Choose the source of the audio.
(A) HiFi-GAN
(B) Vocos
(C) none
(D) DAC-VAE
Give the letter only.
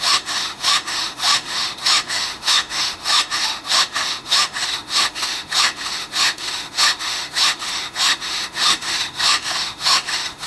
D